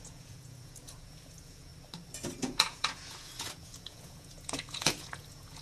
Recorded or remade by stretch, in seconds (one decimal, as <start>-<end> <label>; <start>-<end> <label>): 0.0-1.7 remade; 1.7-2.4 recorded; 2.4-5.6 remade